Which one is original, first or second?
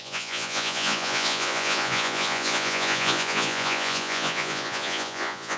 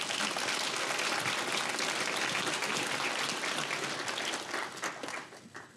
second